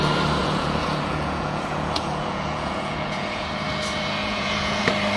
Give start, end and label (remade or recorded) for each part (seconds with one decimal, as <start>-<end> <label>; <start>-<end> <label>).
0.0-0.4 recorded; 0.4-3.5 remade; 3.5-4.2 recorded; 4.2-4.8 remade; 4.8-5.2 recorded